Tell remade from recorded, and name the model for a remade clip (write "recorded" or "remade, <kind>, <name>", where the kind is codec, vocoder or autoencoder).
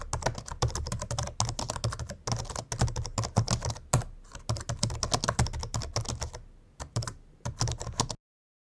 recorded